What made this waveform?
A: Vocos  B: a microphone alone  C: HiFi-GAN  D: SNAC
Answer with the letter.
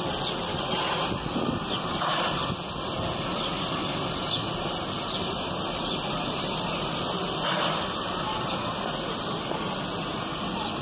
B